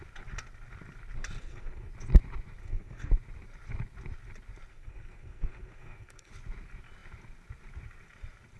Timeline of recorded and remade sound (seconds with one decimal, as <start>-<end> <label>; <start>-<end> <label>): 0.0-1.4 recorded; 1.4-1.9 remade; 1.9-2.6 recorded; 2.6-3.1 remade; 3.1-4.7 recorded; 4.7-6.3 remade; 6.3-8.6 recorded